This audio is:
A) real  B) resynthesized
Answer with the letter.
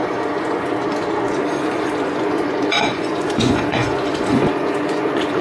B